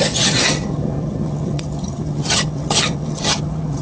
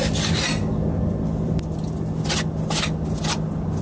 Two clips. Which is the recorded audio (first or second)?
second